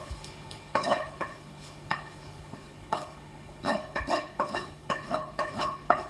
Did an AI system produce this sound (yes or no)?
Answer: yes